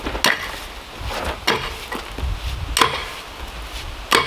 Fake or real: real